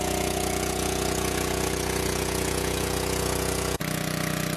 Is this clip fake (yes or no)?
yes